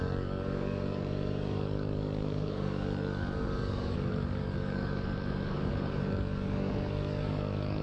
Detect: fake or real fake